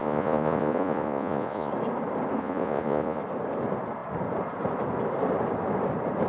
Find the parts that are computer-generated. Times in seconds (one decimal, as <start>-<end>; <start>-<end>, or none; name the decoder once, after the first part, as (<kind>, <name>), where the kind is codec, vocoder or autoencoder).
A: 0.0-1.7 (vocoder, Vocos); 2.4-3.2